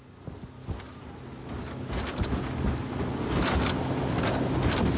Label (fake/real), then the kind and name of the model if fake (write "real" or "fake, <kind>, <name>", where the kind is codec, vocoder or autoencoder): real